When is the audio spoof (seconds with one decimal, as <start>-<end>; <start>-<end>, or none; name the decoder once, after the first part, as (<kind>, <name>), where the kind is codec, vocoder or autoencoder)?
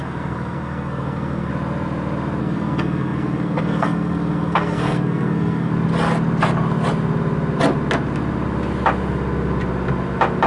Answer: 0.0-1.5 (codec, SNAC); 2.4-5.7